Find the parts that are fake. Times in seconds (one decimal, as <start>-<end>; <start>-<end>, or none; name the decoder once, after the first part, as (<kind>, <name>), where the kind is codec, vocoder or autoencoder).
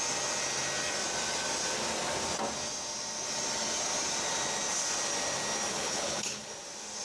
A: 5.7-6.5 (codec, HILCodec)